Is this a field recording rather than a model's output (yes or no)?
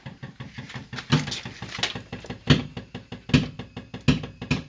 yes